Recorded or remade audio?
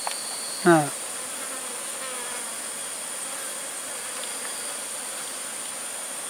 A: recorded